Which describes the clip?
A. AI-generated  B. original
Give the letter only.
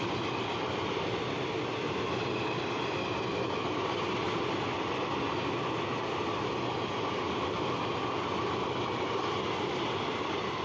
B